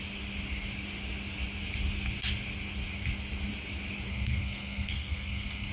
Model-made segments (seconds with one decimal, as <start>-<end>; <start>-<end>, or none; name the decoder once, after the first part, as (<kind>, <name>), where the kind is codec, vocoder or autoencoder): 4.1-5.7 (codec, SNAC)